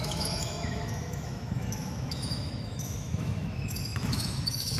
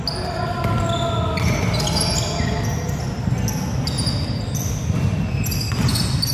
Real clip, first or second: second